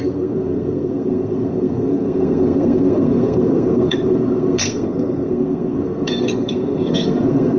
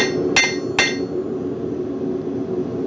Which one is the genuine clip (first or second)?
second